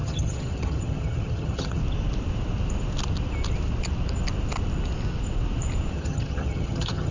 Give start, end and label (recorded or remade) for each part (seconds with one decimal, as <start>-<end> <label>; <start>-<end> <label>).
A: 0.0-1.8 remade; 1.8-5.9 recorded; 5.9-7.1 remade